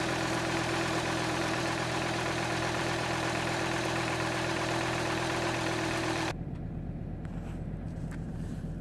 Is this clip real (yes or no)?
no